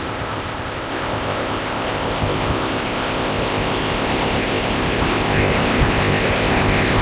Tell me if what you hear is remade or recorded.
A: remade